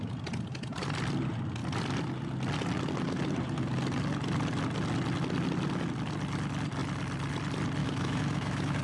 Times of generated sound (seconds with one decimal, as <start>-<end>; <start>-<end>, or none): 7.8-8.8